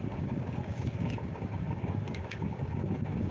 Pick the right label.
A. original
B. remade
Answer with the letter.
B